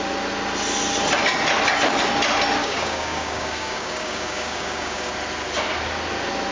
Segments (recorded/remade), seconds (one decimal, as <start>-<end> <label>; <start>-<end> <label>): 0.0-2.6 recorded; 2.6-5.1 remade; 5.1-6.5 recorded